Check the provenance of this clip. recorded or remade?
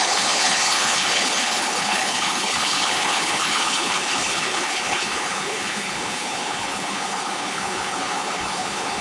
remade